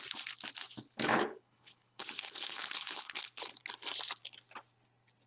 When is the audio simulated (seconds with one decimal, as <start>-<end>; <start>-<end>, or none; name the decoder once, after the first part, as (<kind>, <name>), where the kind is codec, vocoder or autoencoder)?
1.1-3.2 (codec, HILCodec)